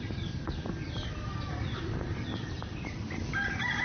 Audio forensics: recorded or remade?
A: remade